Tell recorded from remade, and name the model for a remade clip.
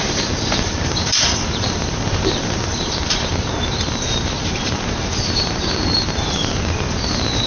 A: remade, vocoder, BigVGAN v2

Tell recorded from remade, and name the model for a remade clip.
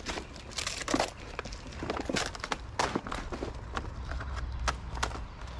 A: recorded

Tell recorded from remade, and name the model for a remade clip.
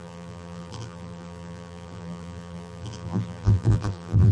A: remade, vocoder, BigVGAN v2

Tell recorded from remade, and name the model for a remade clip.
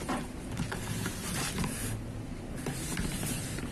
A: recorded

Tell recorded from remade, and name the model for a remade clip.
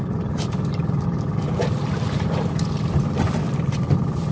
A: remade, vocoder, BigVGAN v2